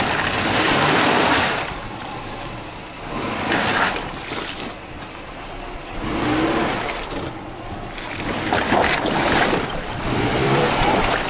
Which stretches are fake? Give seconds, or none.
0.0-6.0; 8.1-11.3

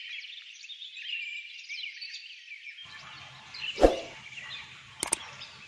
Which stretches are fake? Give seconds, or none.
none

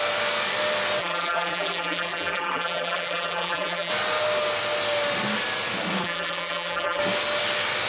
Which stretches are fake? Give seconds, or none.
1.0-3.9; 6.0-7.0